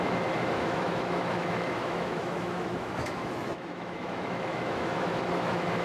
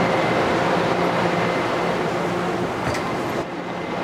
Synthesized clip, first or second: first